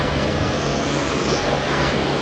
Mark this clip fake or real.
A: fake